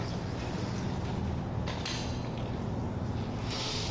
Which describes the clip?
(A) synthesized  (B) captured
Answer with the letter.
B